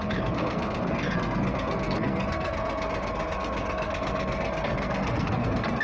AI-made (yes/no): yes